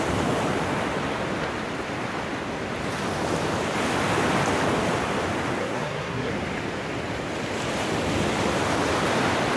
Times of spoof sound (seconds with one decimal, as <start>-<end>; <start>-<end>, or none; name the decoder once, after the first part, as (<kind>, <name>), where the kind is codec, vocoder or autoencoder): 5.6-6.3 (codec, SNAC)

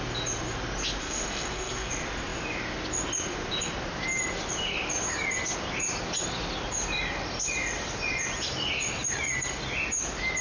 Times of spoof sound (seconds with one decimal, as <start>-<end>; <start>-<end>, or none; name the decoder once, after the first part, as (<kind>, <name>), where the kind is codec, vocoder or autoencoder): 1.0-1.9 (codec, SNAC)

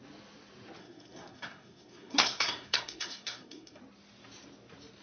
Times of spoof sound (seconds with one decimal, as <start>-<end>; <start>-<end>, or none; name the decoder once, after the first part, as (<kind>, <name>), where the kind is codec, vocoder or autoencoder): 0.8-3.8 (codec, SNAC)

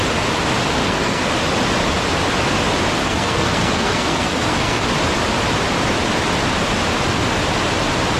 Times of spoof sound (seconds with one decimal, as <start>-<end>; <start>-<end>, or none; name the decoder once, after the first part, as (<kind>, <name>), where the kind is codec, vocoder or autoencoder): 0.8-1.3 (codec, SNAC); 3.0-4.8

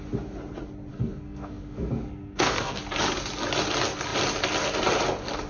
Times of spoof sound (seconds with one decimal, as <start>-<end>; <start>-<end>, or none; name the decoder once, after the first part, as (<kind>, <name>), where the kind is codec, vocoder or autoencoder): 0.9-2.8 (codec, SNAC)

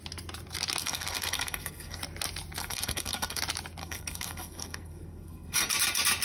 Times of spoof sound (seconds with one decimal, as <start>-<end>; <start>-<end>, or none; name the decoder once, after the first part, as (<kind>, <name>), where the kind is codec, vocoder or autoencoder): 0.8-2.0 (codec, SNAC); 2.6-3.4; 3.8-5.7